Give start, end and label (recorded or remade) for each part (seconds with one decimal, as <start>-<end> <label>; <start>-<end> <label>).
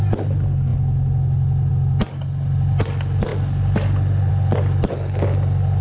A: 0.0-5.8 recorded